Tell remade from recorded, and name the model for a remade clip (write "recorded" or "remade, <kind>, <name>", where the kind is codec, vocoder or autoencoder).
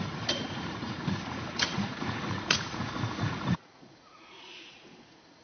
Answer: remade, vocoder, Vocos